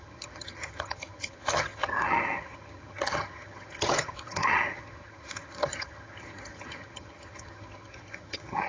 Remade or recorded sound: remade